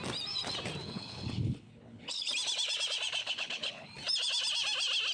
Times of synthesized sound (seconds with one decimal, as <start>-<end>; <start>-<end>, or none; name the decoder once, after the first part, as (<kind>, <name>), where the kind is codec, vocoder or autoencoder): 0.8-2.3 (codec, HILCodec); 3.2-3.9